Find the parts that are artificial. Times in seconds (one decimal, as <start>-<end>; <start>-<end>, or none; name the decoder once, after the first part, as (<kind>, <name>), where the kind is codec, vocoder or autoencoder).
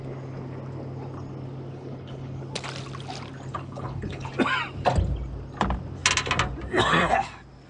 1.7-2.4 (codec, HILCodec); 3.5-4.3